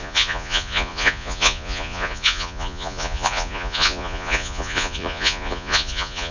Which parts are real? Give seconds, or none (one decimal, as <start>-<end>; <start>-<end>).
none